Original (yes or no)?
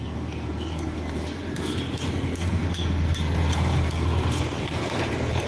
no